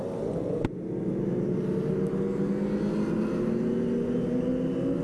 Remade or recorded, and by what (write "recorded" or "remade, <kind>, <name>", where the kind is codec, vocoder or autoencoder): recorded